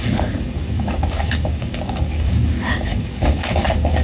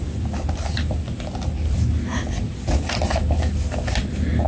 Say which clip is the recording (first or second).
second